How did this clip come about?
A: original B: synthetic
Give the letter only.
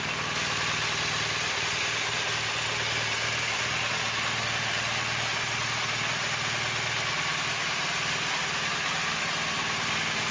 A